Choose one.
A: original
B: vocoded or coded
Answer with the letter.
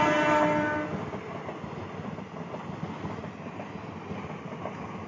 A